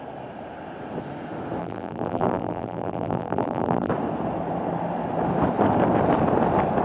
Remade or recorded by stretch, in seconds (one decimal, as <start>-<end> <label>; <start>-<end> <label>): 0.0-1.6 recorded; 1.6-3.9 remade; 3.9-6.8 recorded

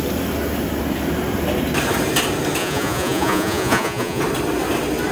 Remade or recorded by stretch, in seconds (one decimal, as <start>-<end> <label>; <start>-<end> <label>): 0.0-2.6 recorded; 2.6-4.2 remade; 4.2-5.1 recorded

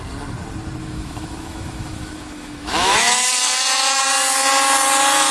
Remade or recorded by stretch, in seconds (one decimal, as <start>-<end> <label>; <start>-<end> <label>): 0.0-0.8 recorded; 0.8-4.0 remade; 4.0-5.3 recorded